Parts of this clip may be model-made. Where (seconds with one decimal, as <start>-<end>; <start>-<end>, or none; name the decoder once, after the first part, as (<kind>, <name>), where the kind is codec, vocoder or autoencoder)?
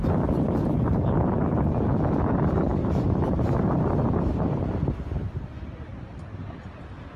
2.7-5.1 (vocoder, BigVGAN v2); 5.9-6.6